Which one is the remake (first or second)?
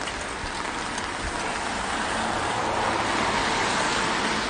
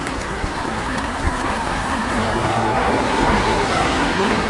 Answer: second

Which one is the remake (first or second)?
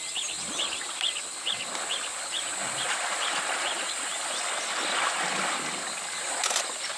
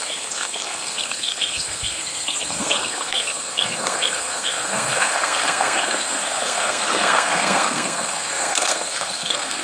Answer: second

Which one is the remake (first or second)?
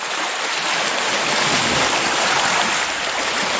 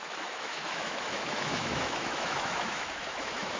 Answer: second